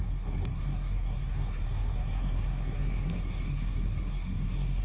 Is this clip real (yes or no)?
no